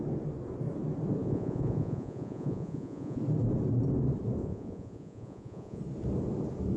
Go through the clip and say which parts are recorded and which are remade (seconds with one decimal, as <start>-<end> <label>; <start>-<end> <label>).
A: 0.0-1.2 recorded; 1.2-3.2 remade; 3.2-4.4 recorded; 4.4-5.8 remade; 5.8-6.8 recorded